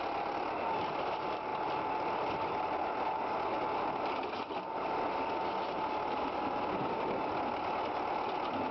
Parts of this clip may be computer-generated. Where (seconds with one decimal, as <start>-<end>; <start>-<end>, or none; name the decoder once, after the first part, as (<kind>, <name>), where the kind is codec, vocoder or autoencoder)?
none